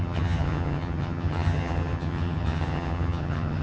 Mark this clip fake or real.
fake